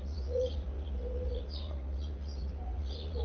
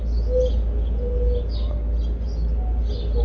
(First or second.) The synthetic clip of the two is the first